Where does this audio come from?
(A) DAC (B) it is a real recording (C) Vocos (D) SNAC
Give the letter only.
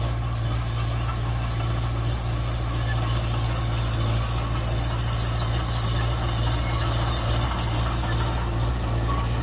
B